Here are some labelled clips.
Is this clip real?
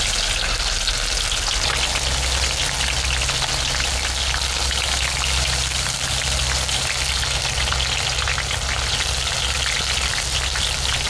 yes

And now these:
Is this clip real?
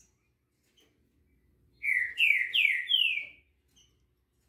yes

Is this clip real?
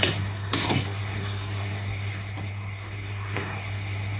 no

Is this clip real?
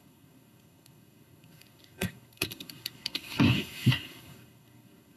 no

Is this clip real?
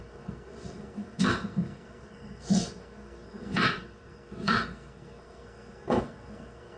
no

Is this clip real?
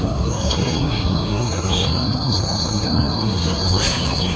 no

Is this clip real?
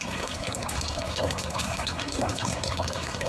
no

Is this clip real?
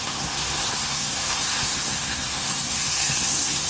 no